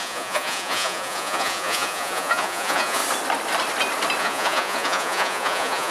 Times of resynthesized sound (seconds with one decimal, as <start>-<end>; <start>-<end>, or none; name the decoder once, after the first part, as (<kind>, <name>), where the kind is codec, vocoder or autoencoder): 0.0-3.0 (vocoder, Vocos); 4.2-5.9